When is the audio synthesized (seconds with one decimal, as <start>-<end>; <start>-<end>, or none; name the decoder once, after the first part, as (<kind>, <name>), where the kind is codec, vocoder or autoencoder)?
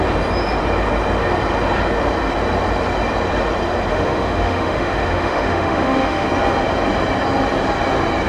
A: 3.9-6.3 (autoencoder, DAC-VAE)